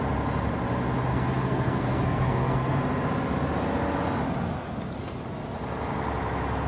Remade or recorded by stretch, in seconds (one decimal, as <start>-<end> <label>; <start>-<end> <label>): 0.0-1.1 recorded; 1.1-2.8 remade; 2.8-6.7 recorded